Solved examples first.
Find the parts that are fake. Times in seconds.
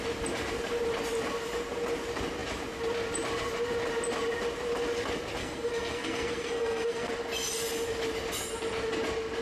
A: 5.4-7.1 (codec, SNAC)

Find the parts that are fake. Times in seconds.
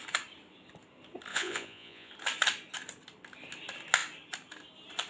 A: 1.3-2.1 (vocoder, Vocos)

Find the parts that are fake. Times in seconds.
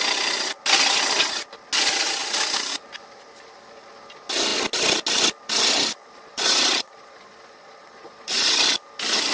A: 6.0-8.3 (vocoder, Vocos)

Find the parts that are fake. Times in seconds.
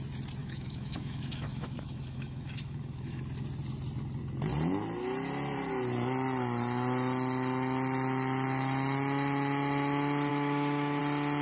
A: 0.4-3.2 (autoencoder, DAC-VAE); 10.3-11.0